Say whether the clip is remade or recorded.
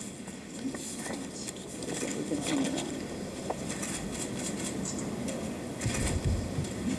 recorded